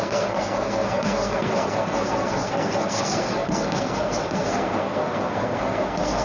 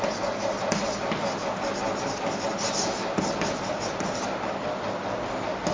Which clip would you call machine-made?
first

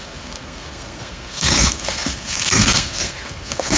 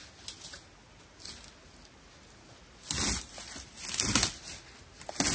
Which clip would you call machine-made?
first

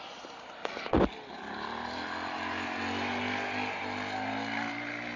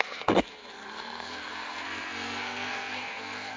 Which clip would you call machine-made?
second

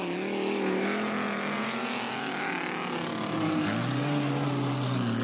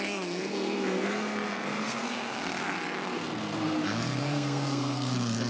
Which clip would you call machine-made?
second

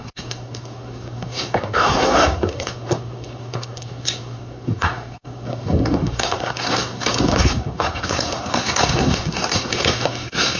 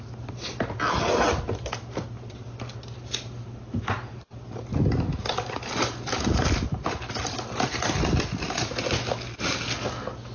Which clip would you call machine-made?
first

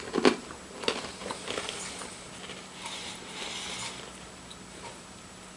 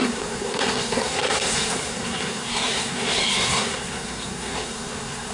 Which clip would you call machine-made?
second